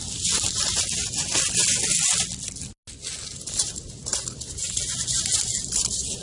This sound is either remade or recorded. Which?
recorded